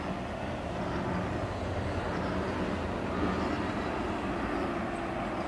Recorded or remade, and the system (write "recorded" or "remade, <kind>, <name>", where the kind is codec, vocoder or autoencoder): recorded